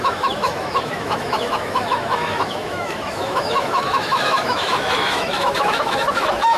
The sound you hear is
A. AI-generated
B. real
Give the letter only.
A